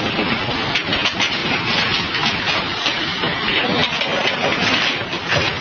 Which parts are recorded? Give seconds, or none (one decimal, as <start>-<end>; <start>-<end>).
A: 0.0-5.6